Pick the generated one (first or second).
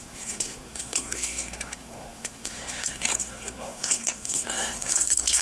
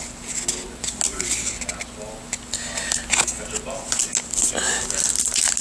first